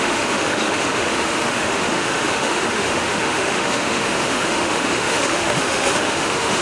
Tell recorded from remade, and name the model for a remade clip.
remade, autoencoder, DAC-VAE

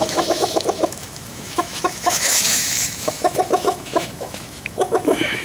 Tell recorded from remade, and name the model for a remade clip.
remade, autoencoder, DAC-VAE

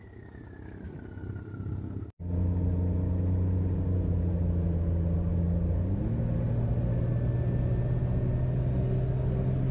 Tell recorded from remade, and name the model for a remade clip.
recorded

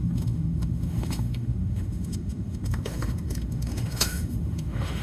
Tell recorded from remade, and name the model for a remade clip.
remade, autoencoder, DAC-VAE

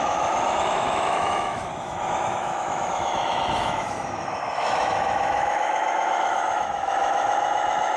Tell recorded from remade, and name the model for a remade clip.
remade, autoencoder, DAC-VAE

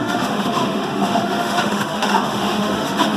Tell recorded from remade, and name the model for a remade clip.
remade, autoencoder, DAC-VAE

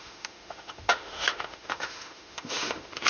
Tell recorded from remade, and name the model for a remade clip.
remade, autoencoder, DAC-VAE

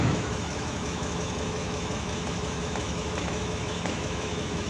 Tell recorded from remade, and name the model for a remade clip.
remade, autoencoder, DAC-VAE